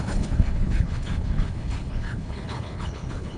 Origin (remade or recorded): remade